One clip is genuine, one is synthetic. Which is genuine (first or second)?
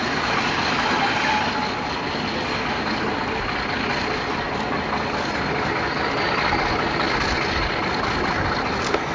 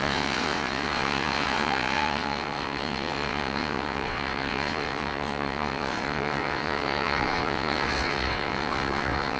first